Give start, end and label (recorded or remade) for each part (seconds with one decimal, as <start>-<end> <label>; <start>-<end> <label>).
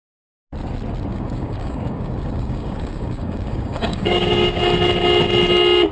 0.0-1.1 recorded; 1.1-4.6 remade; 4.6-5.9 recorded